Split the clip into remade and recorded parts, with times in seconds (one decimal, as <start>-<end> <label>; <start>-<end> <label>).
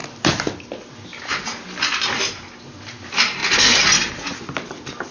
0.0-5.1 recorded